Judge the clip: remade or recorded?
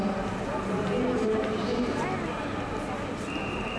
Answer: recorded